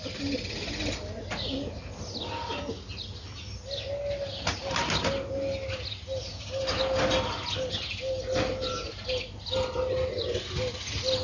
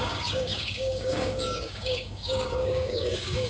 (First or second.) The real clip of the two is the first